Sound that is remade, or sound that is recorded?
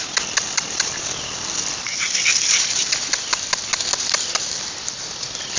recorded